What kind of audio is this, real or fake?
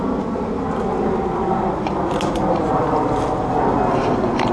real